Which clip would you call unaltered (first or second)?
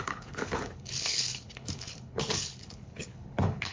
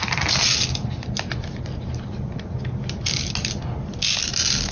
second